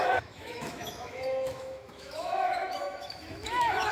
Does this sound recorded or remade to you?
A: remade